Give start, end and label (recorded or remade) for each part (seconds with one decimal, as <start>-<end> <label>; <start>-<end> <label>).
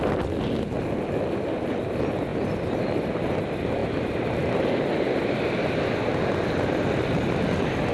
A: 0.0-2.3 recorded; 2.3-3.0 remade; 3.0-7.9 recorded